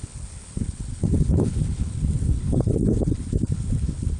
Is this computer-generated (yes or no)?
yes